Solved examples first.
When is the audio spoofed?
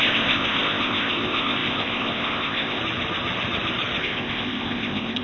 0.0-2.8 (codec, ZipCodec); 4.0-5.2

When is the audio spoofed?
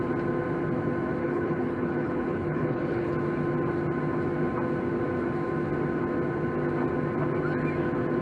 1.2-3.1 (codec, HILCodec)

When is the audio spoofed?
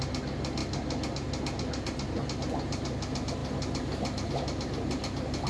none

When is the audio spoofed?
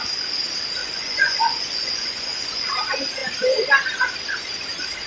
0.8-2.7 (vocoder, Vocos)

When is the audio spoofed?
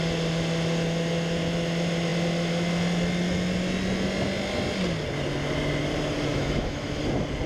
6.3-7.0 (autoencoder, DAC-VAE)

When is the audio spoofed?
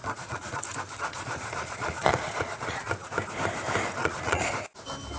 0.0-0.6 (vocoder, Vocos); 1.1-2.9; 4.0-4.5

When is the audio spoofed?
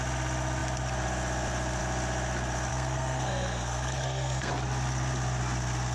2.7-4.5 (codec, SNAC)